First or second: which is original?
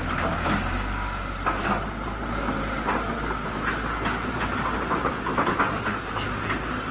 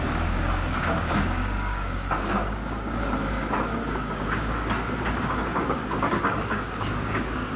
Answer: first